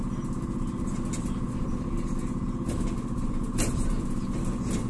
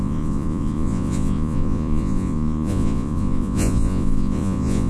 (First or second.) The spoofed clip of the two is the second